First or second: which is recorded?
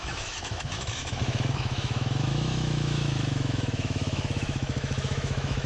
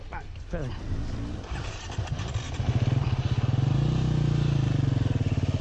second